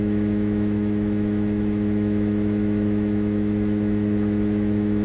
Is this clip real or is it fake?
fake